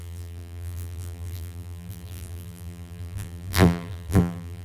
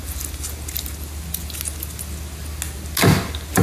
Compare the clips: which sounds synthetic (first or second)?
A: first